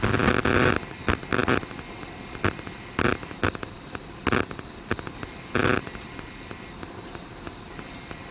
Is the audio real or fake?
real